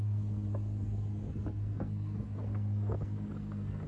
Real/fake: fake